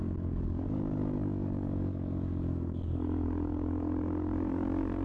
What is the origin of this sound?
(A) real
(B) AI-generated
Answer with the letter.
B